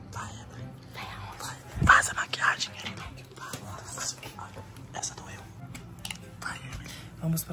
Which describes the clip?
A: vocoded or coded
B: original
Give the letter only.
B